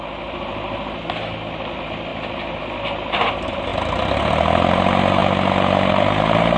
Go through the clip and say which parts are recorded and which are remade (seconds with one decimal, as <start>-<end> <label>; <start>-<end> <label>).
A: 0.0-6.6 recorded